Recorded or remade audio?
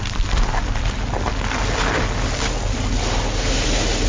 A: recorded